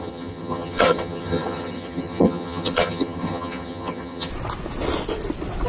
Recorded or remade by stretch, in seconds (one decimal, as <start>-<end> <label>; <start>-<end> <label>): 0.0-4.3 remade; 4.3-5.7 recorded